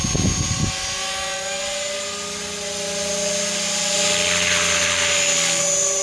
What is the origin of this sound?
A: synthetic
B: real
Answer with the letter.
B